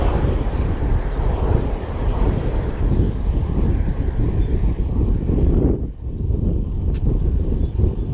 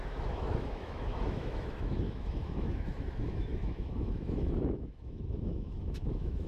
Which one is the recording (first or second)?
first